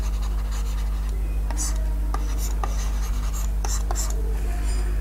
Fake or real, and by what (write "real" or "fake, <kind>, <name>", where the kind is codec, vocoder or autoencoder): real